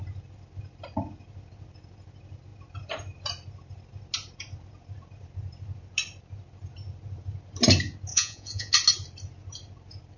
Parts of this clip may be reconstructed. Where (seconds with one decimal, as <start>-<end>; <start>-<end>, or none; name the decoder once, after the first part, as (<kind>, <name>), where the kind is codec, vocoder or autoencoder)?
8.1-8.7 (vocoder, Vocos)

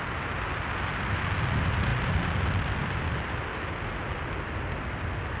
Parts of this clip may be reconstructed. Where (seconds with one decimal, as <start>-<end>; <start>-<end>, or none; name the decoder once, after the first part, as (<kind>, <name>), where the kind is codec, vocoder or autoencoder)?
none

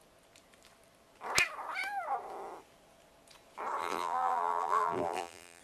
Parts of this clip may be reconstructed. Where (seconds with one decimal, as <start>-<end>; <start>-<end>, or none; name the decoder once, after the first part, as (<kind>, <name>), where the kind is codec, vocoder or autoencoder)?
3.8-5.6 (vocoder, BigVGAN v2)

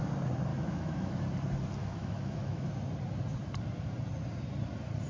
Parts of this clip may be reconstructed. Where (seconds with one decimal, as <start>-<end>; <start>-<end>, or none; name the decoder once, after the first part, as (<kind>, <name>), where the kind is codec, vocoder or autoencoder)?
0.5-1.2 (autoencoder, DAC-VAE); 1.8-2.7